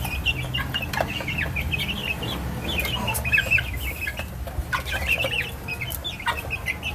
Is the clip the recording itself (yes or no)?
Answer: yes